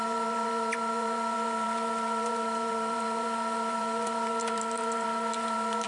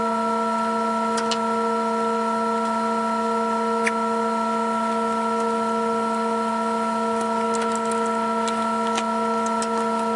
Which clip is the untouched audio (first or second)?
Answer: second